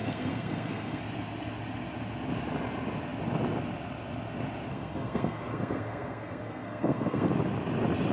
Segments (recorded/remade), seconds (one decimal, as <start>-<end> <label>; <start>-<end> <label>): 0.0-1.0 remade; 1.0-4.7 recorded; 4.7-7.3 remade; 7.3-8.1 recorded